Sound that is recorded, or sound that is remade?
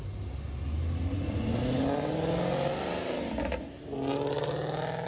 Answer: recorded